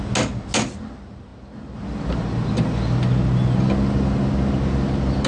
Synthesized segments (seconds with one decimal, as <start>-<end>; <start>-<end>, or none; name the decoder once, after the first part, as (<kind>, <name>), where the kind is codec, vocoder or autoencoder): none